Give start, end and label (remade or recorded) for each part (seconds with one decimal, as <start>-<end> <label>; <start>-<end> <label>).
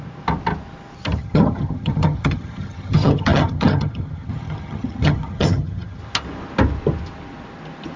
0.0-1.2 recorded; 1.2-6.0 remade; 6.0-8.0 recorded